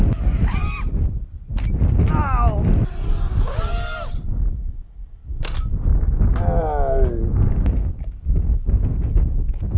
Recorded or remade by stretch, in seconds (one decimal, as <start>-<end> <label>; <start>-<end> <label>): 0.0-7.3 recorded; 7.3-8.4 remade; 8.4-9.8 recorded